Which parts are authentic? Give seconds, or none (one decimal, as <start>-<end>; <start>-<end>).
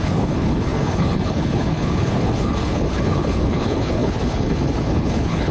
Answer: none